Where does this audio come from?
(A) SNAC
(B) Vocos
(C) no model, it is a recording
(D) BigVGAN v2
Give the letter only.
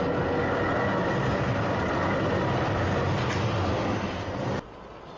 C